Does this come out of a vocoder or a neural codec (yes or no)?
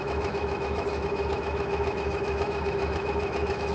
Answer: yes